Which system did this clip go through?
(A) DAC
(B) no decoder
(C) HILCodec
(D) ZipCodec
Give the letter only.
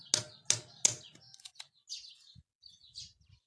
B